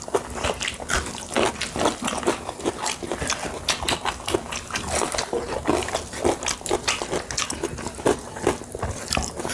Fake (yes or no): no